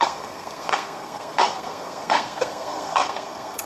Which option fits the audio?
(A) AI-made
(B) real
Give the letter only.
A